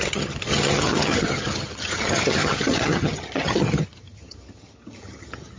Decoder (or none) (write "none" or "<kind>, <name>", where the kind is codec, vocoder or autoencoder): vocoder, HiFi-GAN